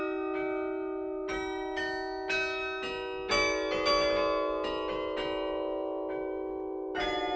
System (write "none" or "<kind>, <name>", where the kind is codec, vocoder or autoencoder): none